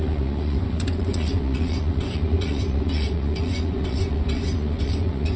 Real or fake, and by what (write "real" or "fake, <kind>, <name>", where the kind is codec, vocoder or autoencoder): fake, vocoder, Vocos